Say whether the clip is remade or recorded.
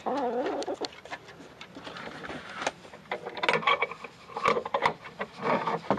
recorded